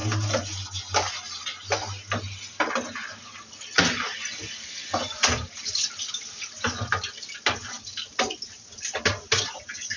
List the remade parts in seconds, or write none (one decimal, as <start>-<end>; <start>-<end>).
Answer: none